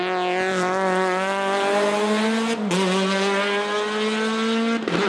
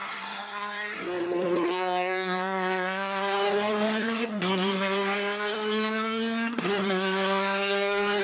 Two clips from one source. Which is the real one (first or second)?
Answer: first